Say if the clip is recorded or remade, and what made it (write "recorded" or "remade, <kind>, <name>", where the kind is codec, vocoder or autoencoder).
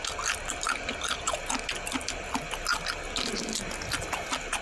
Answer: recorded